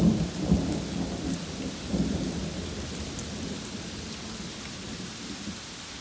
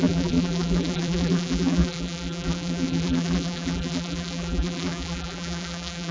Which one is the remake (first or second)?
second